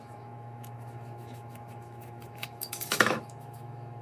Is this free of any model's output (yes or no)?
no